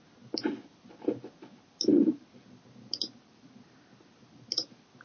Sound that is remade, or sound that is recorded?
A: recorded